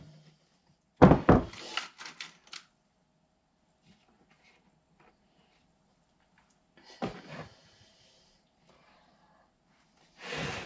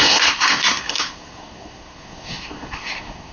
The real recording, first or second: first